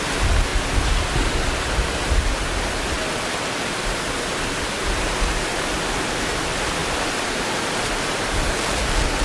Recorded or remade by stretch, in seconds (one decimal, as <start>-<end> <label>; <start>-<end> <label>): 0.0-9.2 recorded